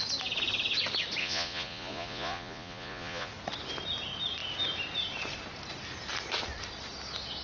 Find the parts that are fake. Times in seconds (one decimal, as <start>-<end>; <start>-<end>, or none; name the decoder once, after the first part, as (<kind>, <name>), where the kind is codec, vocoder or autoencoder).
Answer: 1.2-3.3 (vocoder, Vocos)